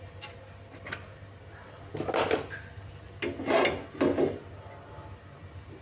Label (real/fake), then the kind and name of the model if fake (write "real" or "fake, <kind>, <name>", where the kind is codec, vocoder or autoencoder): real